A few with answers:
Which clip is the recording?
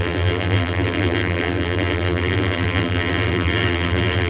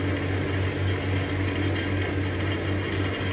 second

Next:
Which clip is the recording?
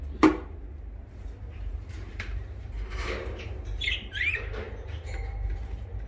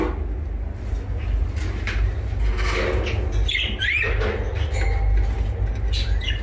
second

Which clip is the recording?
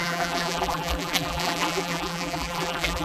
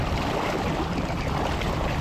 second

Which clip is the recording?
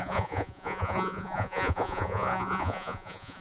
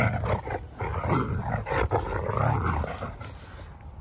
second